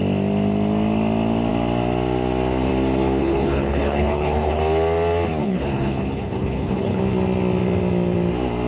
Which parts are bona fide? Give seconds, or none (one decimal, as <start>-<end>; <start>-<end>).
0.0-3.2; 4.6-5.4; 7.0-8.7